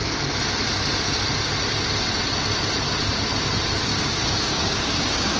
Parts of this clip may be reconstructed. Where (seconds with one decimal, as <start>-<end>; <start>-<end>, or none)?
3.9-5.4